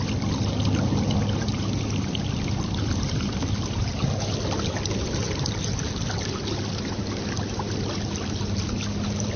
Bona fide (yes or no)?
yes